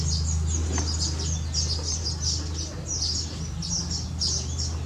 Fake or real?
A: real